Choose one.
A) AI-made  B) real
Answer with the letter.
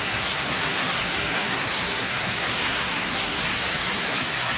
A